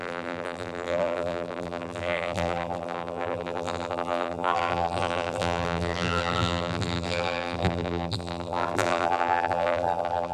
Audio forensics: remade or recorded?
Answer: remade